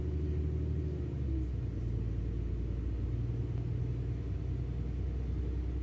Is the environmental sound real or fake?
real